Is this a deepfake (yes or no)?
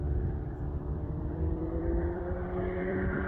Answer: yes